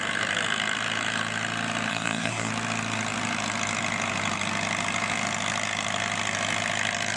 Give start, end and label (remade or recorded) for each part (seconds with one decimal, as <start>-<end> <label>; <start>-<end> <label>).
0.0-1.9 recorded; 1.9-2.5 remade; 2.5-7.2 recorded